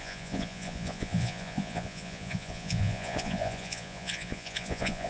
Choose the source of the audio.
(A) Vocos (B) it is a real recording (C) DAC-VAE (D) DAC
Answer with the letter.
A